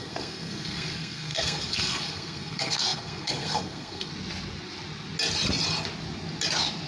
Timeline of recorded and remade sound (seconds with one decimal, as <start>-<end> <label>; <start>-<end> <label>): 0.0-4.1 remade; 4.1-6.9 recorded

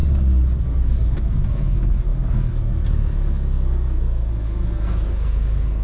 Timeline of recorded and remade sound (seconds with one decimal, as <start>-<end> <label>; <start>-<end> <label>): 0.0-0.6 recorded; 0.6-5.8 remade

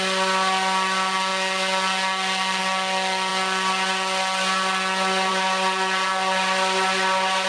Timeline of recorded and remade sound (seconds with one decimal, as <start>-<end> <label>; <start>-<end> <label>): 0.0-7.5 recorded